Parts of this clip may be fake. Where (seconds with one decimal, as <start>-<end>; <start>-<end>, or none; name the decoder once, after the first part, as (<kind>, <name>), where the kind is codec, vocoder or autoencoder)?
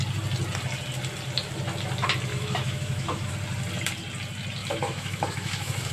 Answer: 2.3-3.3 (autoencoder, DAC-VAE); 4.6-5.9